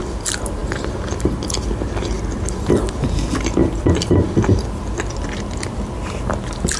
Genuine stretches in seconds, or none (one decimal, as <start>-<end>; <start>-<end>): 0.0-6.8